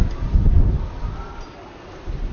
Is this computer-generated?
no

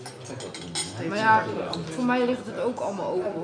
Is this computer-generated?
no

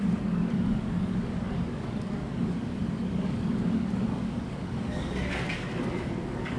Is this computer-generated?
yes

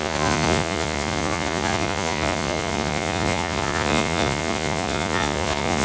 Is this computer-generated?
yes